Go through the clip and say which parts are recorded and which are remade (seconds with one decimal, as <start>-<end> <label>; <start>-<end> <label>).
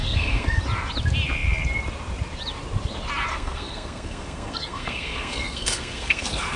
0.0-0.6 remade; 0.6-3.3 recorded; 3.3-6.6 remade